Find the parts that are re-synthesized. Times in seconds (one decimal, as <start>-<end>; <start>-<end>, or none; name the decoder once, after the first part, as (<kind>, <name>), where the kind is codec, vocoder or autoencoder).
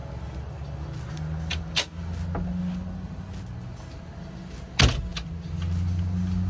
none